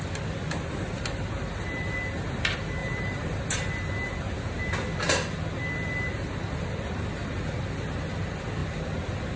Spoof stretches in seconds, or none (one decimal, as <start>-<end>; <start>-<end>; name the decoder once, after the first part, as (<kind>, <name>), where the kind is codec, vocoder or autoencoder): 2.8-3.4 (vocoder, BigVGAN v2)

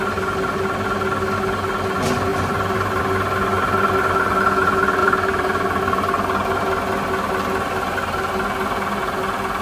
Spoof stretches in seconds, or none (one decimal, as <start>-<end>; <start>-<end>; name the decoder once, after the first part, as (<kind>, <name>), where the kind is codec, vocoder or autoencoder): 2.3-3.0 (vocoder, BigVGAN v2); 5.0-5.8

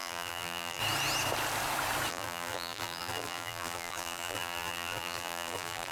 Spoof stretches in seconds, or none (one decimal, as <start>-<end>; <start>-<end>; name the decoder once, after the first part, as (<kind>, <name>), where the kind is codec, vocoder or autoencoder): 0.0-0.8 (vocoder, BigVGAN v2); 2.1-5.9